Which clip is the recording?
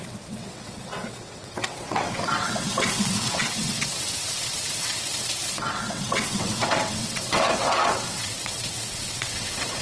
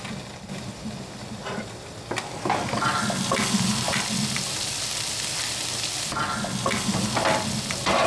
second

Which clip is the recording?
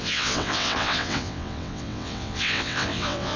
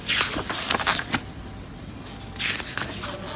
second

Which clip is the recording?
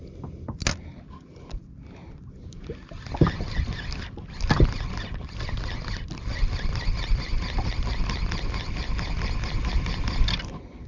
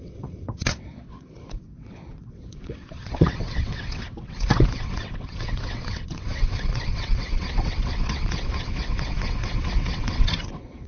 first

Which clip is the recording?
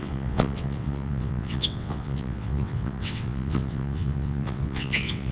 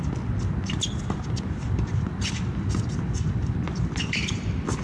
second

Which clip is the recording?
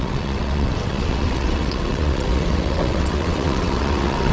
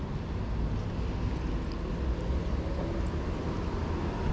second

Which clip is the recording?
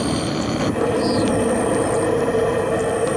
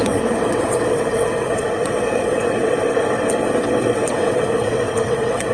first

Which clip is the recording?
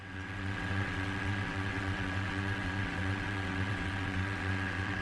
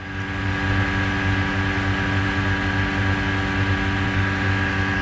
second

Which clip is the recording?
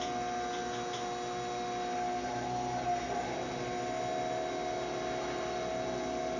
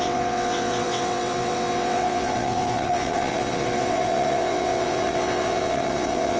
first